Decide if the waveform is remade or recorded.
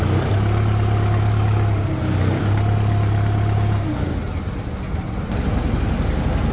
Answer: recorded